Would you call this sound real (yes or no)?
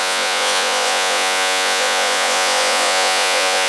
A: no